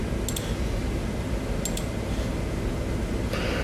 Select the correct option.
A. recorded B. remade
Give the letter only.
A